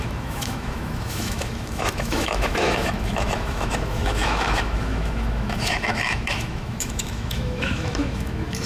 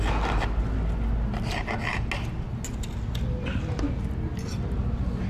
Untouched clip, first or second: second